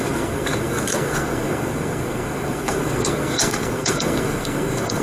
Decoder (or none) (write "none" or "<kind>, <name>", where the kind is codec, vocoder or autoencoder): codec, SNAC